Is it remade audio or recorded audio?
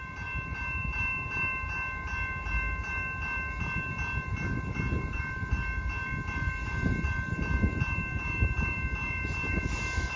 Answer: recorded